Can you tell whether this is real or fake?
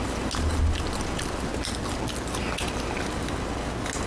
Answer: real